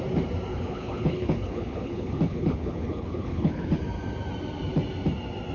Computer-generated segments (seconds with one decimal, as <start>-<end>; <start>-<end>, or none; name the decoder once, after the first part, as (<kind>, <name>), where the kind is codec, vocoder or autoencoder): 0.5-3.8 (codec, HILCodec)